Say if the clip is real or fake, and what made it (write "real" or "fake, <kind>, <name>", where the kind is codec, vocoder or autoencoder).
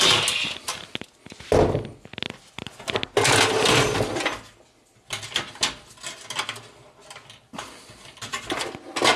real